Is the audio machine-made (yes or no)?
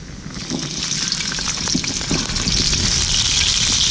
no